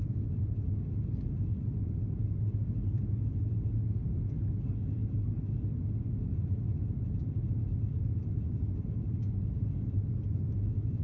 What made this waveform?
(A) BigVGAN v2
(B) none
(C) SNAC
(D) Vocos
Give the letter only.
B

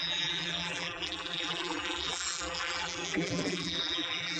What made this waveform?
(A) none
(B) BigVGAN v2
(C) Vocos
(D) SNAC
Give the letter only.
B